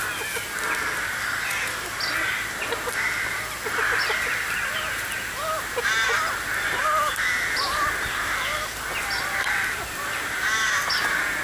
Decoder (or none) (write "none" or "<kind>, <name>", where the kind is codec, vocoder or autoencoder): none